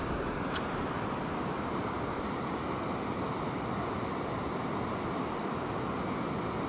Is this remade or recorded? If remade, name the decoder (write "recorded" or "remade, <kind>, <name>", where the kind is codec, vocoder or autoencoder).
recorded